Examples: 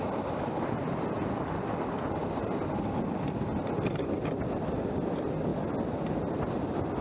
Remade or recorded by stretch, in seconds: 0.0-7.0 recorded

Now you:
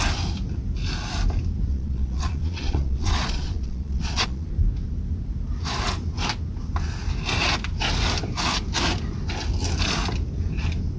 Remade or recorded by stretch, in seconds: 0.0-1.7 recorded; 1.7-4.5 remade; 4.5-11.0 recorded

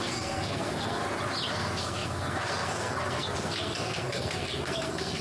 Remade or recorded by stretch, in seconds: 0.0-1.0 remade; 1.0-1.5 recorded; 1.5-5.2 remade

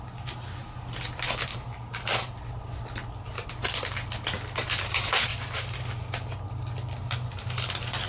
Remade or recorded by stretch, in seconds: 0.0-1.5 recorded; 1.5-2.5 remade; 2.5-5.3 recorded; 5.3-5.8 remade; 5.8-8.1 recorded

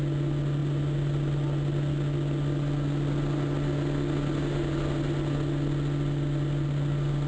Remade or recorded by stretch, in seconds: 0.0-7.3 recorded

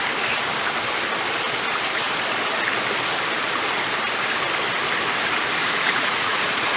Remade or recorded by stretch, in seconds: 0.0-5.6 recorded; 5.6-6.8 remade

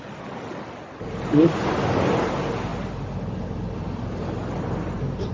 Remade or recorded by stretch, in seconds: 0.0-5.3 recorded